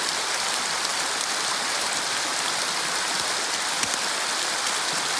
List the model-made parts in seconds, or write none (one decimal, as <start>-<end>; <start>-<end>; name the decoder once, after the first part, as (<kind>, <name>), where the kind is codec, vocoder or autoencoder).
none